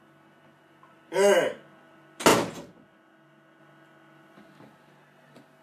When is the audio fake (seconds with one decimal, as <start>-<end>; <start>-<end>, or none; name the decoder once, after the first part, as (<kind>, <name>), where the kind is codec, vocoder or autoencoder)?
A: none